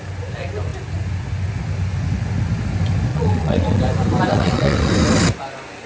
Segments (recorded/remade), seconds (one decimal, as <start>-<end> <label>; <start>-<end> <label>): 0.0-3.1 recorded; 3.1-3.8 remade; 3.8-4.3 recorded; 4.3-4.9 remade; 4.9-5.9 recorded